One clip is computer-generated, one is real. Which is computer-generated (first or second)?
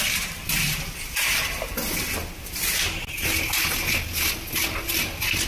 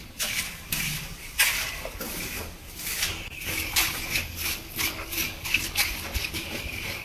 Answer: second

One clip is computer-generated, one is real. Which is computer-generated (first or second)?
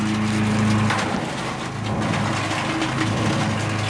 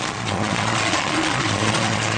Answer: second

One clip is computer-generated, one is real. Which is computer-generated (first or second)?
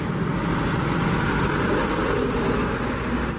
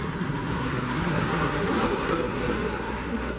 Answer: second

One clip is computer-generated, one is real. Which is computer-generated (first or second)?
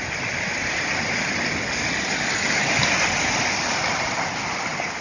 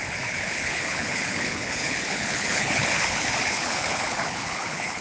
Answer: second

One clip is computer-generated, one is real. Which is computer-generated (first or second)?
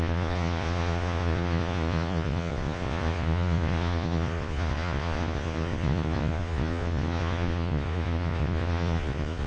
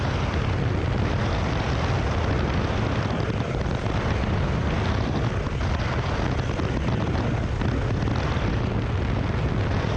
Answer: first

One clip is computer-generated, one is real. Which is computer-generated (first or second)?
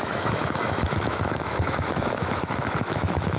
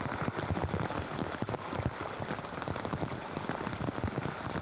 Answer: first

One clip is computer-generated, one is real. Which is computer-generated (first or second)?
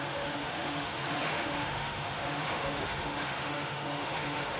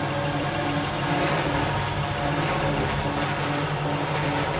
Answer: first